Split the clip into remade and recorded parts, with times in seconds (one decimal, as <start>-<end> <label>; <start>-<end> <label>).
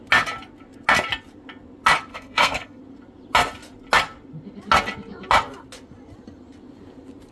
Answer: 0.0-2.1 recorded; 2.1-2.8 remade; 2.8-7.3 recorded